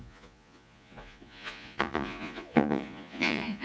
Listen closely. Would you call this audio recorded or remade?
remade